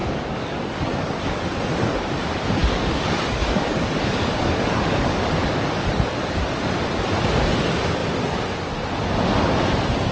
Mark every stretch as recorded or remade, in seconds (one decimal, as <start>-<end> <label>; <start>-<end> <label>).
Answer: 0.0-1.6 remade; 1.6-2.6 recorded; 2.6-6.0 remade; 6.0-10.1 recorded